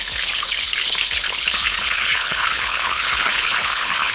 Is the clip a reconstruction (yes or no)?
yes